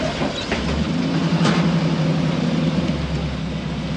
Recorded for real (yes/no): yes